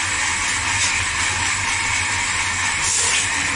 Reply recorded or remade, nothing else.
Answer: recorded